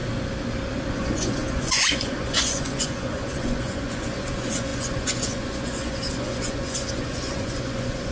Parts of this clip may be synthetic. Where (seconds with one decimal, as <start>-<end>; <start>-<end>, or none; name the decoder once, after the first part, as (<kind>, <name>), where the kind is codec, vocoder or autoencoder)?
0.9-8.1 (vocoder, Vocos)